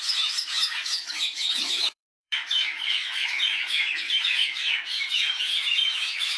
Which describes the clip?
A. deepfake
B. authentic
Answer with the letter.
A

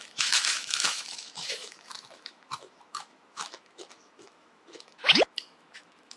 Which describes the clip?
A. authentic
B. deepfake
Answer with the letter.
B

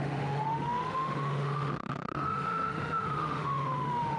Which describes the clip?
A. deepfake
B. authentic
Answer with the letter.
A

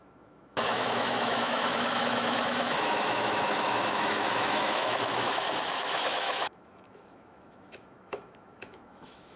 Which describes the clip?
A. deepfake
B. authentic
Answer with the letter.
A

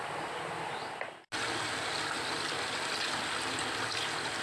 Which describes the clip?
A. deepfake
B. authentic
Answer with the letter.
B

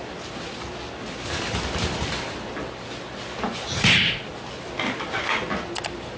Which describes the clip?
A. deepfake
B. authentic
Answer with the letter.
B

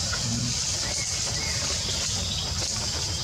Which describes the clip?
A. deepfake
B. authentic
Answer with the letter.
B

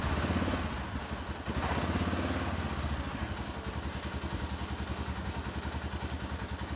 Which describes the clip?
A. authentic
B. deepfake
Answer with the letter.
A